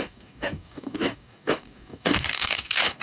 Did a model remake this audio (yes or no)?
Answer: yes